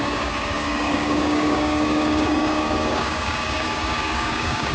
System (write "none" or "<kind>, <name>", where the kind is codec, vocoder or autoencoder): codec, DAC